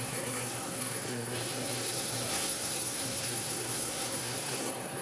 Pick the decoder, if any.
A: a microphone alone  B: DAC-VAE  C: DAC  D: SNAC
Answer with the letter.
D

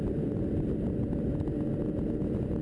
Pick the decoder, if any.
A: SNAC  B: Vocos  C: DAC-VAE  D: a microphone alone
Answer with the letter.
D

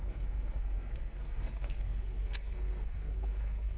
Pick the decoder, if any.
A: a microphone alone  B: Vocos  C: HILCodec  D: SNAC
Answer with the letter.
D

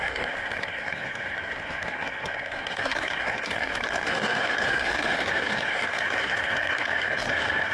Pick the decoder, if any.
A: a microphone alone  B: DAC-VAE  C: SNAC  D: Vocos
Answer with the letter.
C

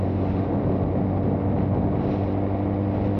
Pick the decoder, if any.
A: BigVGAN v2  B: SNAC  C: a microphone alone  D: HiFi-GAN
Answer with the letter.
C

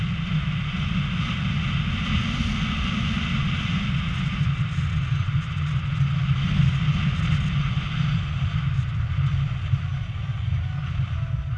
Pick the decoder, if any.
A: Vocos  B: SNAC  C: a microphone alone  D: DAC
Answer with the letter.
C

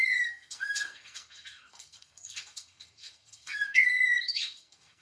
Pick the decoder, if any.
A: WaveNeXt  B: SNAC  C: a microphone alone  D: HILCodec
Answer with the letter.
B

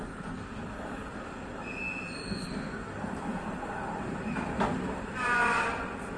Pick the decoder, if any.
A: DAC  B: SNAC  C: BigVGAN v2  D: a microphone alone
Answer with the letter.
D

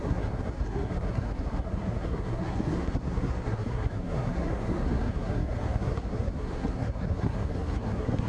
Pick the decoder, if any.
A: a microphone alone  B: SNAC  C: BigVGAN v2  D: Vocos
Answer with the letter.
B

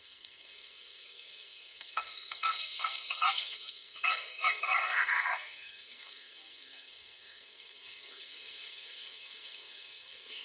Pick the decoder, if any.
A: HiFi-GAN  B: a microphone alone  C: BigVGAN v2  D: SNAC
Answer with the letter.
D